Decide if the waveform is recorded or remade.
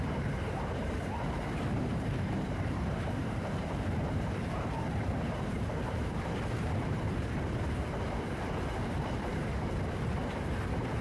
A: remade